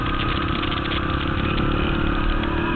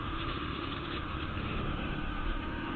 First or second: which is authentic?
first